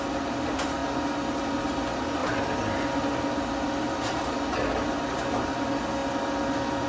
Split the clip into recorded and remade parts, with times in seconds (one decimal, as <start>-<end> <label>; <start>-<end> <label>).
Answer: 0.0-6.9 recorded